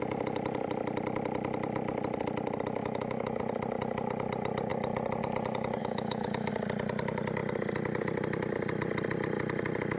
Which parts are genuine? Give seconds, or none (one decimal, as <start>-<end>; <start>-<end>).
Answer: 0.0-2.8; 3.4-5.8; 6.5-10.0